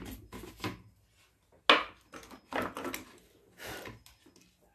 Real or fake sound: real